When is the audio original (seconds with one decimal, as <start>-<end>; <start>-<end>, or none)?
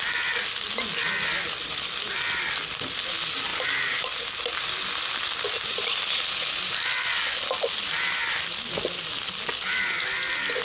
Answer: 0.0-10.6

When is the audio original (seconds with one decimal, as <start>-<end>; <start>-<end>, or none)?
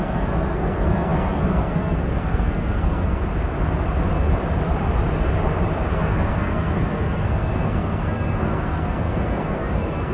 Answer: 3.2-5.9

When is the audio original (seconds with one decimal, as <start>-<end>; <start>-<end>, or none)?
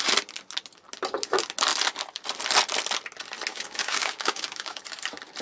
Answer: 0.0-3.5; 4.8-5.4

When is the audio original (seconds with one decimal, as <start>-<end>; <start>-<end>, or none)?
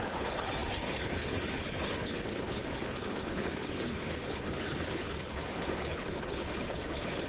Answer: none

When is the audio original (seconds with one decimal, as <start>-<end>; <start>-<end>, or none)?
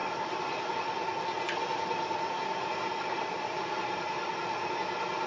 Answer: 0.0-5.3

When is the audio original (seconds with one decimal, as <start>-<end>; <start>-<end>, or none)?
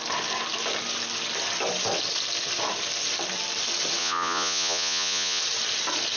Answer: 0.0-4.0; 5.4-6.2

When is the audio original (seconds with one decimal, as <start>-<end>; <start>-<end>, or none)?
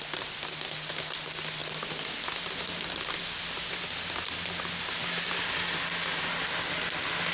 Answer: 0.0-7.3